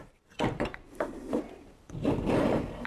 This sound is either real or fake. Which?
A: fake